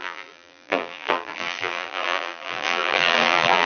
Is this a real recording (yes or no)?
no